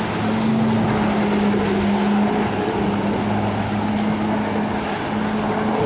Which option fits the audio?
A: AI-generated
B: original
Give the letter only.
B